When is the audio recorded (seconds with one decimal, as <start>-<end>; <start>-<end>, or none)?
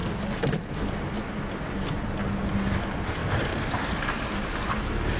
0.0-3.2; 4.5-5.2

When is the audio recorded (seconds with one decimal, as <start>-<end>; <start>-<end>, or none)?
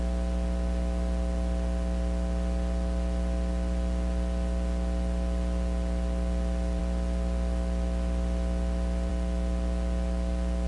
0.0-10.7